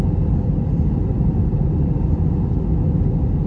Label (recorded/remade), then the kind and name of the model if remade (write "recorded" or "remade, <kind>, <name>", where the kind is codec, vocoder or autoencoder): recorded